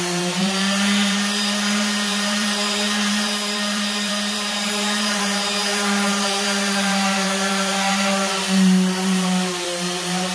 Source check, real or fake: fake